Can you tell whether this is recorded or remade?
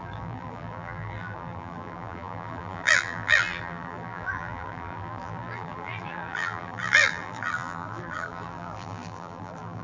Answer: remade